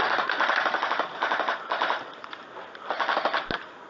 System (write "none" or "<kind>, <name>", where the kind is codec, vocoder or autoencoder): none